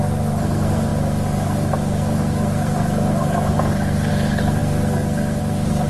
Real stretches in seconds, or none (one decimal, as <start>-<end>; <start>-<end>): none